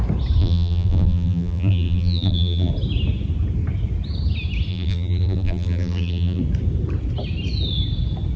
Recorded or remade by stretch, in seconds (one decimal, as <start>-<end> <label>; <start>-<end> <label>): 0.0-0.4 recorded; 0.4-2.7 remade; 2.7-4.7 recorded; 4.7-6.4 remade; 6.4-8.4 recorded